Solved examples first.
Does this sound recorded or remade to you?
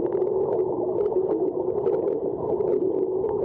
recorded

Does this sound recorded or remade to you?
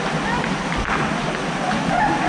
recorded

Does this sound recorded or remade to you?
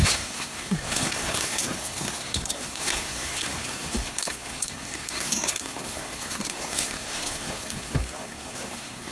remade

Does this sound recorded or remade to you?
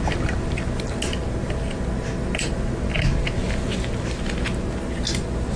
recorded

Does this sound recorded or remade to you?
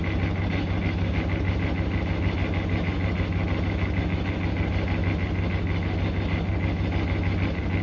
recorded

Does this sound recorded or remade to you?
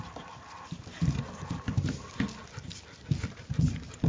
recorded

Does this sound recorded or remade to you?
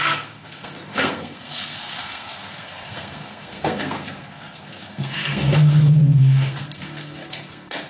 remade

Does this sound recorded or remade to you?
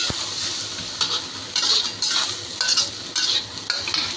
recorded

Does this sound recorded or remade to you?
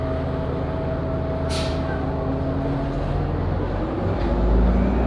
recorded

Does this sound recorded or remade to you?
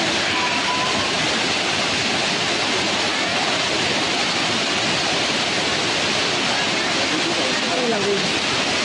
recorded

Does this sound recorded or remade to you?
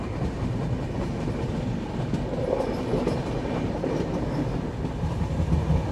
recorded